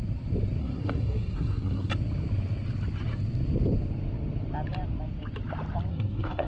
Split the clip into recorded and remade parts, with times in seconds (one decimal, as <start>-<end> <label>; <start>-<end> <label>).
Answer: 0.0-0.6 recorded; 0.6-1.9 remade; 1.9-5.9 recorded; 5.9-6.5 remade